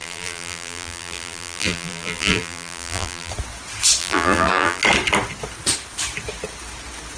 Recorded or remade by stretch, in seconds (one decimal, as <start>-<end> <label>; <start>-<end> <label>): 0.0-3.3 remade; 3.3-4.0 recorded; 4.0-4.8 remade; 4.8-7.2 recorded